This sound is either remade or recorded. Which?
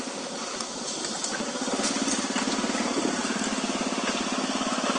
recorded